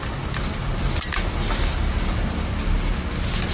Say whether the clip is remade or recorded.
recorded